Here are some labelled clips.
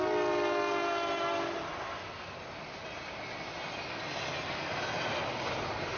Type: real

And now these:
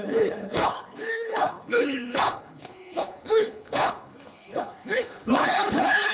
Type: fake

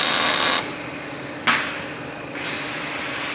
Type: real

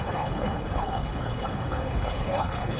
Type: fake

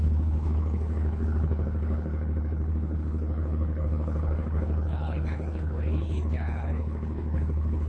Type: fake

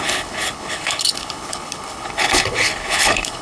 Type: fake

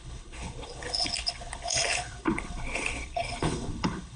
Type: fake